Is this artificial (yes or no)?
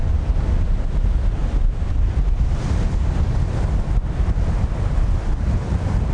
no